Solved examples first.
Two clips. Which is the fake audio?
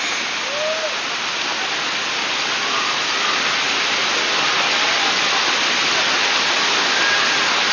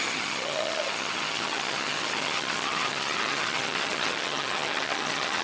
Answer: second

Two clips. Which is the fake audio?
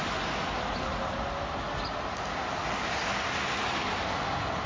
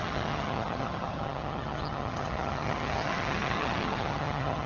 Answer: second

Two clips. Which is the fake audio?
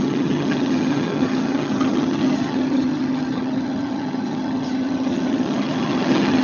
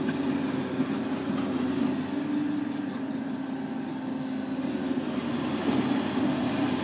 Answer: first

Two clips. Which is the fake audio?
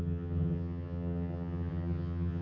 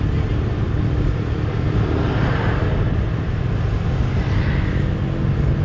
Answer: first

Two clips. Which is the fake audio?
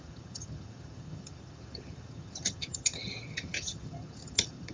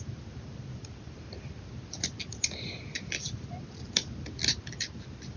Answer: first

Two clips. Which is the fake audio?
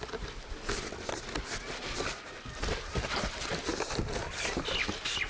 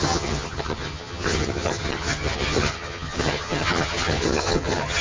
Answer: second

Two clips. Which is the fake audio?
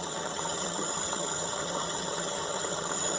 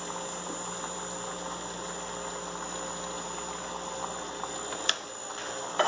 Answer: first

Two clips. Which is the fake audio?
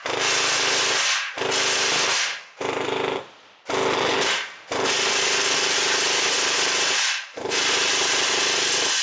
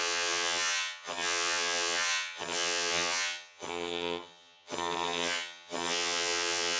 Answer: second